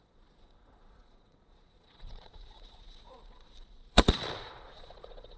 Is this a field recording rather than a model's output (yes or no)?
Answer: no